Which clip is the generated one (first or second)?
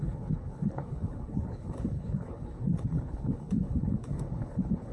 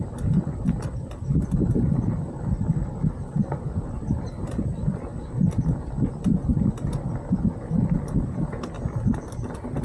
first